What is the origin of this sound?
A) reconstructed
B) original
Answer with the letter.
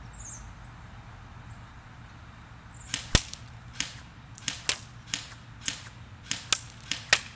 B